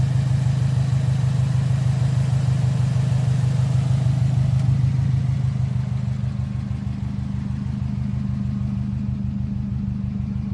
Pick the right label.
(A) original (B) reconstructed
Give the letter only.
A